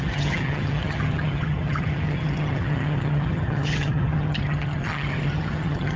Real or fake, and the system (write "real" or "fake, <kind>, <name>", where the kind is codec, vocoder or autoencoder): fake, vocoder, HiFi-GAN